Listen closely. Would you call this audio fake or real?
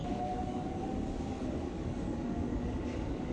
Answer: fake